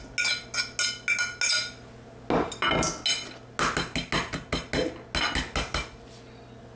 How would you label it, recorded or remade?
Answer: recorded